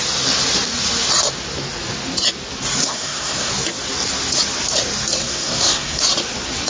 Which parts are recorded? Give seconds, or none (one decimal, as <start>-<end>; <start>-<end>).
0.0-2.8; 3.5-5.2; 6.0-6.7